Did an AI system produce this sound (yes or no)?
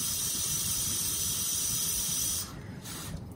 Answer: yes